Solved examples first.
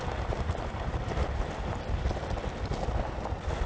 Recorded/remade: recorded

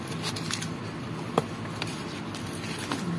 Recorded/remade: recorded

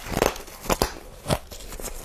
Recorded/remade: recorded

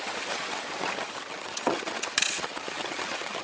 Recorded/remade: remade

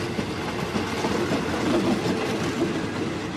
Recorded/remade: recorded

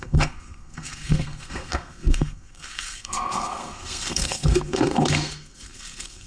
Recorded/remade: remade